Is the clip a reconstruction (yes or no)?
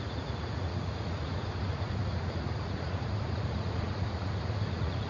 yes